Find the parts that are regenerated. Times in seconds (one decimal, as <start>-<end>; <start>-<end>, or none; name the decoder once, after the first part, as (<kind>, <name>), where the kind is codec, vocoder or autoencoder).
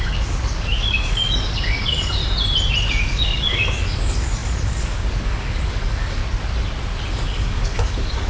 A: 0.0-2.2 (codec, DAC); 2.9-6.2; 7.1-8.3